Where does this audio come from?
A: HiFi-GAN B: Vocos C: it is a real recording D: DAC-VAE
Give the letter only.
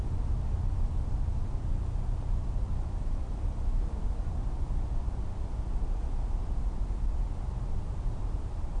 C